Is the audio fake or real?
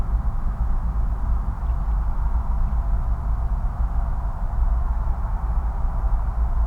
real